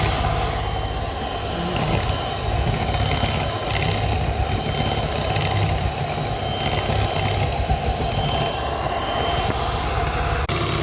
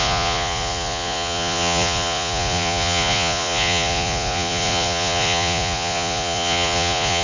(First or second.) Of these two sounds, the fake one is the second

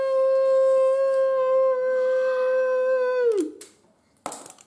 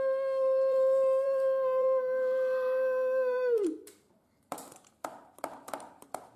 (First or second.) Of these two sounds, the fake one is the second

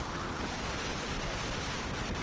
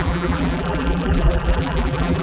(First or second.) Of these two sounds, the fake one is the second